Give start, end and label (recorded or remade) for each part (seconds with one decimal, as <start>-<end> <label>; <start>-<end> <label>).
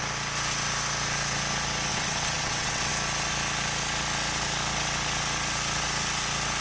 0.0-1.9 recorded; 1.9-2.9 remade; 2.9-6.6 recorded